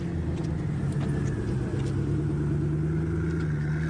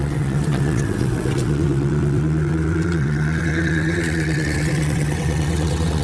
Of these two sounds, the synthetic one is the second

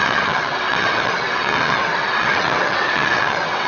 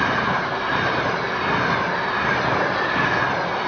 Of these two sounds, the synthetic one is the first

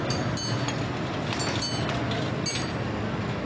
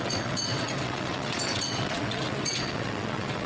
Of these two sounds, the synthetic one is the second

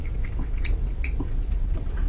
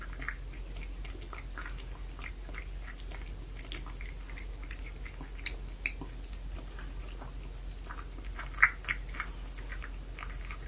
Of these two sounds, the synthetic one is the first